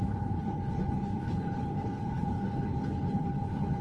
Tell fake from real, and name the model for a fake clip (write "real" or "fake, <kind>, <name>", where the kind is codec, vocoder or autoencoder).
fake, codec, HILCodec